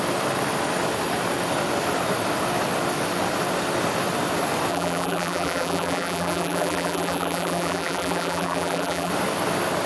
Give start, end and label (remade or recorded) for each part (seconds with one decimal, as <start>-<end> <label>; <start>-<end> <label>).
0.0-4.7 recorded; 4.7-9.1 remade; 9.1-9.9 recorded